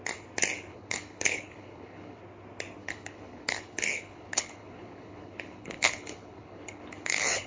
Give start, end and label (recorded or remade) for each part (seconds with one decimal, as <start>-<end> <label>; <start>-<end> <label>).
0.0-0.7 recorded; 0.7-2.2 remade; 2.2-2.8 recorded; 2.8-7.5 remade